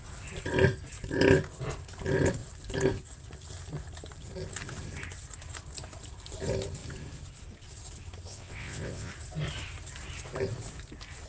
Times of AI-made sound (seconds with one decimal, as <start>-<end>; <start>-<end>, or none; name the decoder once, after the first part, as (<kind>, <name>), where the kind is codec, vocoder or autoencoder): 8.3-9.1 (vocoder, WaveNeXt)